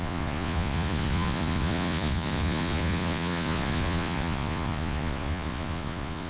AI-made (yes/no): yes